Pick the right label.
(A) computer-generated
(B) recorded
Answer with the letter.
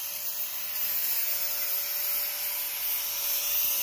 B